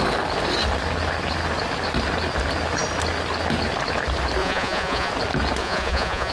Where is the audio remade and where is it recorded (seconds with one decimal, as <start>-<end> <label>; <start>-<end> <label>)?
0.0-4.4 recorded; 4.4-5.1 remade; 5.1-5.6 recorded; 5.6-6.3 remade